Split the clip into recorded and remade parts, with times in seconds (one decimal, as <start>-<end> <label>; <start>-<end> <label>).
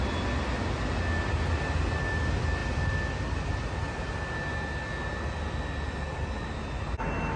0.0-7.4 recorded